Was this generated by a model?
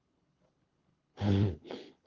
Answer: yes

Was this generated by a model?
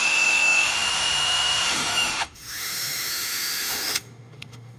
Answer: yes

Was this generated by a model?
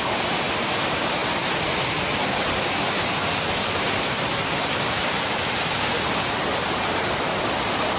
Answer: no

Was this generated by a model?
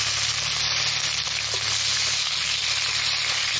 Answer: no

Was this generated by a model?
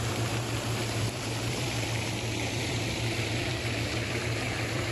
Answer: yes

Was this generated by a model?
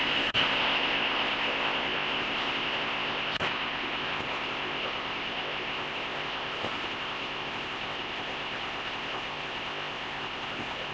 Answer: yes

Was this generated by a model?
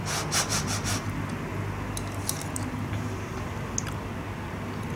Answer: no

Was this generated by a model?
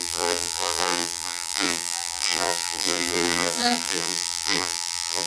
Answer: yes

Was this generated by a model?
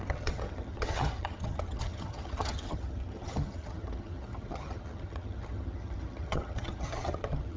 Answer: yes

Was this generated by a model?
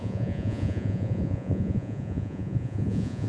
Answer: yes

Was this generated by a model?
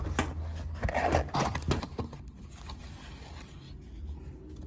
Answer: no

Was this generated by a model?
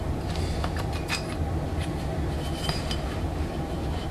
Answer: yes